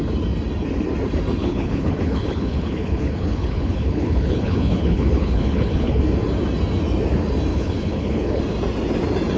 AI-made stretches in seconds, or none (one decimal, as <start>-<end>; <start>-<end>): 1.4-6.0; 7.5-8.4